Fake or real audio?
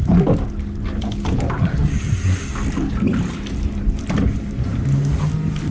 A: real